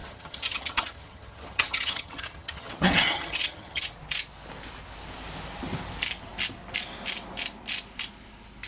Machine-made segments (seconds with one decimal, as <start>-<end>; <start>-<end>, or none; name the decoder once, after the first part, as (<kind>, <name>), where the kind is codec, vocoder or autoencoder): 0.0-3.9 (vocoder, HiFi-GAN)